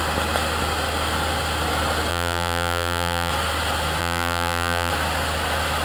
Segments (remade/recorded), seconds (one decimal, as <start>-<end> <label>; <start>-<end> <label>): 0.0-2.1 recorded; 2.1-3.3 remade; 3.3-4.0 recorded; 4.0-4.9 remade; 4.9-5.8 recorded